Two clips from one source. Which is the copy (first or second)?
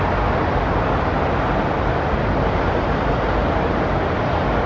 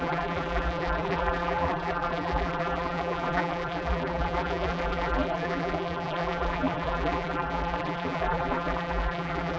second